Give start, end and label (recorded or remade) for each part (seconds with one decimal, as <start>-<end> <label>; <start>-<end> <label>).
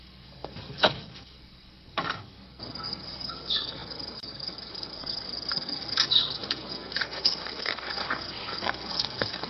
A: 0.0-9.5 remade